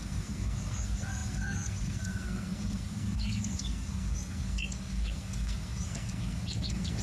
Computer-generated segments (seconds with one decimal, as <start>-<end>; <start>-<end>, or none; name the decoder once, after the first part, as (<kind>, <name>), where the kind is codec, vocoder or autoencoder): 0.0-7.0 (codec, SNAC)